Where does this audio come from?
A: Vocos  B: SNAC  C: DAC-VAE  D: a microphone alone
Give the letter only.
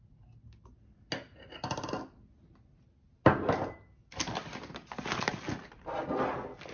D